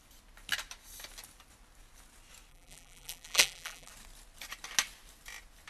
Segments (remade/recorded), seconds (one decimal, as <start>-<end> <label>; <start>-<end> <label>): 0.0-2.5 recorded; 2.5-3.9 remade; 3.9-5.7 recorded

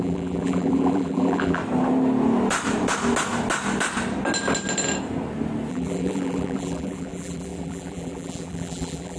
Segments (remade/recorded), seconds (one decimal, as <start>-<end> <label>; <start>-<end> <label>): 0.0-1.6 remade; 1.6-5.7 recorded; 5.7-9.2 remade

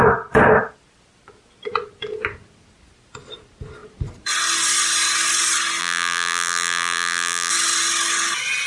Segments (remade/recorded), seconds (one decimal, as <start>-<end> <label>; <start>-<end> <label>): 0.0-5.8 recorded; 5.8-7.5 remade; 7.5-8.7 recorded

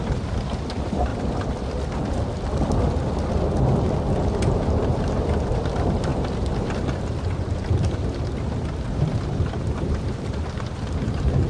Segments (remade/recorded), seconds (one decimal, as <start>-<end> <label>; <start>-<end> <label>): 0.0-1.1 remade; 1.1-4.4 recorded; 4.4-6.1 remade; 6.1-7.7 recorded; 7.7-11.5 remade

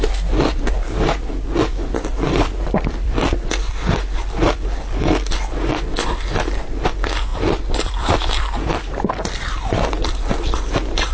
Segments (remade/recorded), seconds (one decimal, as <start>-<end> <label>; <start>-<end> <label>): 0.0-11.1 remade

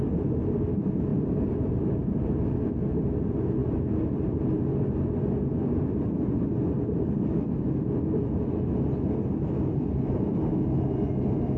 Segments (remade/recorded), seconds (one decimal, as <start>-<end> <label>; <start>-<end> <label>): 0.0-1.1 recorded; 1.1-1.8 remade; 1.8-11.6 recorded

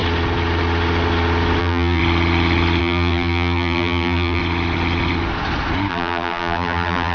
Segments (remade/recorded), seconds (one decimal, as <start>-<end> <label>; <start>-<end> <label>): 0.0-1.6 recorded; 1.6-2.0 remade; 2.0-2.8 recorded; 2.8-4.4 remade; 4.4-5.9 recorded; 5.9-7.1 remade